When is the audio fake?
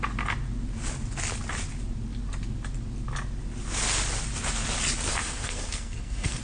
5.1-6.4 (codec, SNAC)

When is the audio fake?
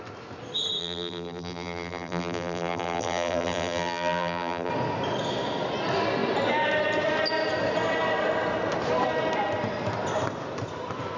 0.8-4.7 (vocoder, BigVGAN v2)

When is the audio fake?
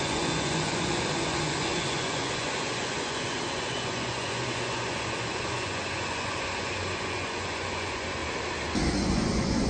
0.0-8.2 (vocoder, Vocos); 8.9-9.7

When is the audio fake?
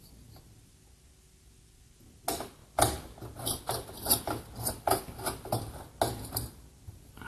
none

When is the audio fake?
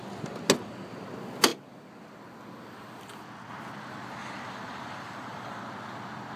4.2-5.6 (vocoder, BigVGAN v2)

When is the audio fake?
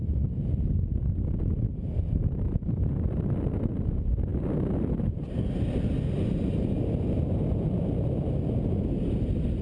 none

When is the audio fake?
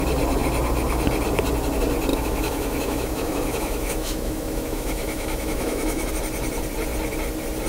2.1-6.1 (autoencoder, DAC-VAE)